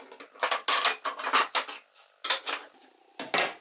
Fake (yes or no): no